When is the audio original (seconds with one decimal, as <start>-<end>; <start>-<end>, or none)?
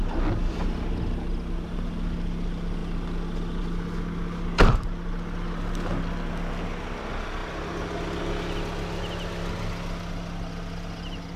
0.0-11.4